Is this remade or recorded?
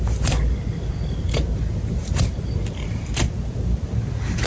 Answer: recorded